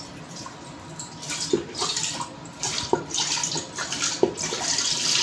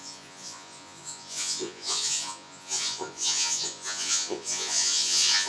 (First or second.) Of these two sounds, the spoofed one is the second